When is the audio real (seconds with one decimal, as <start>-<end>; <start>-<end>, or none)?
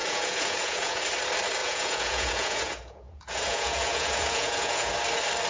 1.0-1.6; 4.9-5.5